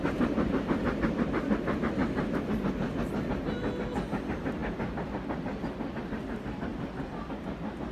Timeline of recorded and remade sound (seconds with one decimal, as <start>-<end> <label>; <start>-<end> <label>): 0.0-7.9 recorded